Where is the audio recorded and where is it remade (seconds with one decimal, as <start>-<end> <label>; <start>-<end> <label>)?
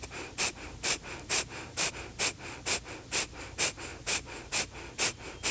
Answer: 0.0-1.9 remade; 1.9-3.9 recorded; 3.9-4.5 remade; 4.5-5.5 recorded